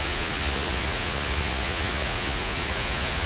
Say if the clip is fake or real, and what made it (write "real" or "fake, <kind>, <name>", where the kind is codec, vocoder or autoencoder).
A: fake, vocoder, Vocos